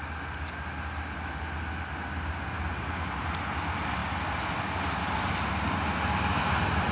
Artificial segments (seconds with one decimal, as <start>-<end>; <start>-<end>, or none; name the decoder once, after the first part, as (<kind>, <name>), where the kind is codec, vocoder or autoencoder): none